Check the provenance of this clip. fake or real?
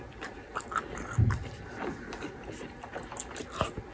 real